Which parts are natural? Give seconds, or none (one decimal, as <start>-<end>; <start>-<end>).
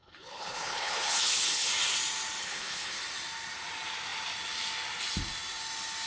1.7-2.4; 3.0-6.1